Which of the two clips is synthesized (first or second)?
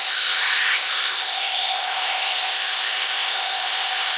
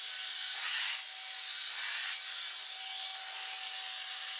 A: first